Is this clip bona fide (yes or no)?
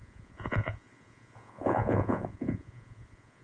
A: no